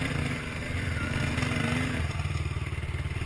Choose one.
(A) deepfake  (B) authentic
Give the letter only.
B